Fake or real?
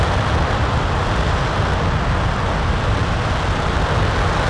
real